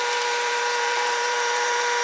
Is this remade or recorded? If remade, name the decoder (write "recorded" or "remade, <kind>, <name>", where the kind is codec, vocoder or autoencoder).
remade, vocoder, BigVGAN v2